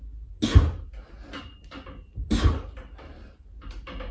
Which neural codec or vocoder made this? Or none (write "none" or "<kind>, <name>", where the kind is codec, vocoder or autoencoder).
none